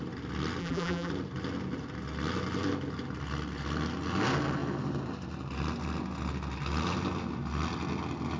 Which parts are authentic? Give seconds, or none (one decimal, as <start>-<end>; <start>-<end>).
0.0-0.6; 1.1-8.4